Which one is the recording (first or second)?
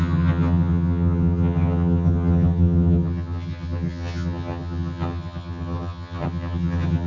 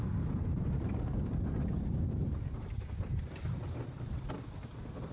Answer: second